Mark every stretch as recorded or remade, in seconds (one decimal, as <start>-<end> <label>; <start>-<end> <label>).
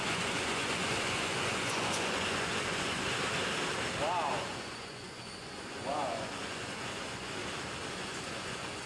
0.0-3.0 remade; 3.0-4.3 recorded; 4.3-7.4 remade; 7.4-8.0 recorded; 8.0-8.9 remade